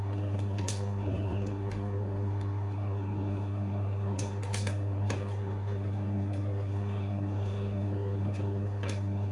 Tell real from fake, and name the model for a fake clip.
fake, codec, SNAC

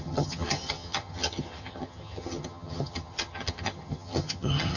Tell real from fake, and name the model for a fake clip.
fake, vocoder, HiFi-GAN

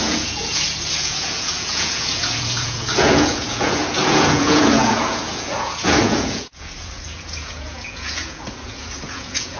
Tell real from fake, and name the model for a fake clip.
fake, vocoder, Vocos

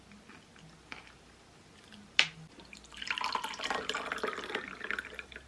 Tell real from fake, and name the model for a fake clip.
real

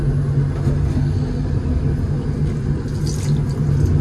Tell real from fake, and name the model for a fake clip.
real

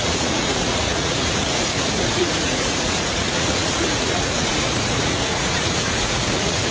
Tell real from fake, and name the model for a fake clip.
fake, vocoder, Vocos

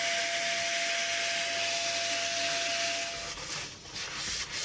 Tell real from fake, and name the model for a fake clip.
real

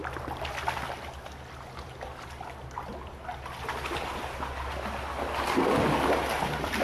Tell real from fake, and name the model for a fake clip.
real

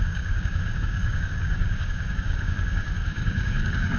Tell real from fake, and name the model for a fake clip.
fake, codec, DAC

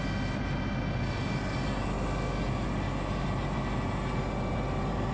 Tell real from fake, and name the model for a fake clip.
real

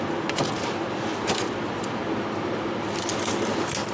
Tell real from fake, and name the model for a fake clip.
real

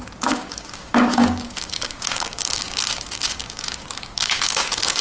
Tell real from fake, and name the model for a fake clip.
fake, codec, DAC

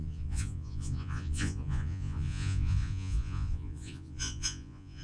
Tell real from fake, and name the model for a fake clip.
fake, vocoder, Vocos